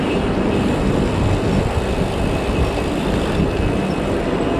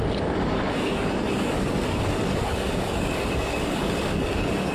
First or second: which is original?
first